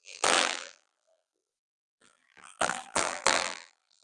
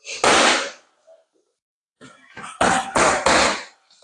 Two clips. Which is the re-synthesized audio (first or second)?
first